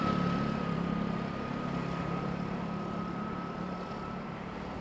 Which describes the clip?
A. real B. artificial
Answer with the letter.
B